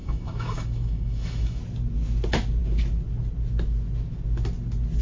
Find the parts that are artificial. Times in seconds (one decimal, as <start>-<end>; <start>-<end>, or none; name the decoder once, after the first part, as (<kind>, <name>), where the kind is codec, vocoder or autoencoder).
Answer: 0.0-1.6 (autoencoder, DAC-VAE)

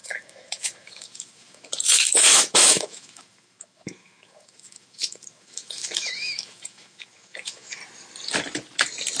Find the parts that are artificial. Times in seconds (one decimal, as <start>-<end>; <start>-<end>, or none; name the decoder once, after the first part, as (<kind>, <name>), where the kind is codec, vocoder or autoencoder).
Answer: 0.0-7.8 (autoencoder, DAC-VAE)

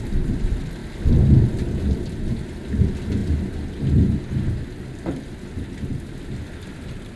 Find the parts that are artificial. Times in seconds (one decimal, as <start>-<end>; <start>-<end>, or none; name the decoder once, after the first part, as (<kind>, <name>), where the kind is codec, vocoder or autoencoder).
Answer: none

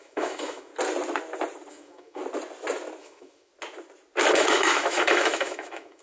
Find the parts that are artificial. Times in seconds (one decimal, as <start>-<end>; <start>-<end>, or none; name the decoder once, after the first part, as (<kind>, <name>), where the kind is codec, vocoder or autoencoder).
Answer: 0.0-0.7 (autoencoder, DAC-VAE); 1.7-2.2; 3.0-3.5; 4.3-6.0

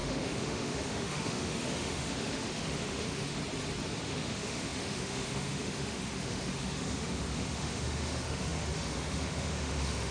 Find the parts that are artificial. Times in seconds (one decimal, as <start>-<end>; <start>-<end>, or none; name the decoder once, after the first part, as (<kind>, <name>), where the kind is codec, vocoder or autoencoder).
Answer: 0.0-3.4 (autoencoder, DAC-VAE); 4.0-10.1

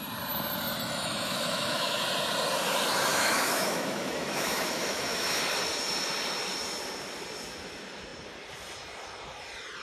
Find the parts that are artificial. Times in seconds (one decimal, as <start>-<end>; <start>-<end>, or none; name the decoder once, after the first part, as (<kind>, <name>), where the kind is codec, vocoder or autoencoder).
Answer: 0.8-2.0 (autoencoder, DAC-VAE); 3.1-5.4

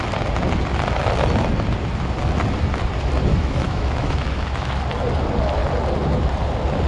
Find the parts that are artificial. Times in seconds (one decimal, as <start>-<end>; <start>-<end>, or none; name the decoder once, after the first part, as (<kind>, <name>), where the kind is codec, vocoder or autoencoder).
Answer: 3.3-4.8 (autoencoder, DAC-VAE)